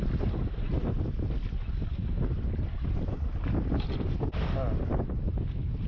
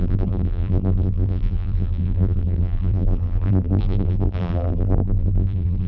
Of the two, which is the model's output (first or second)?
second